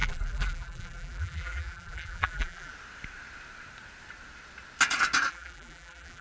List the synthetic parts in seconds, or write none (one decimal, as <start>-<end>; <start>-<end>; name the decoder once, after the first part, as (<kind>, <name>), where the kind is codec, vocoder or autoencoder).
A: 0.0-2.7 (vocoder, BigVGAN v2); 5.3-6.2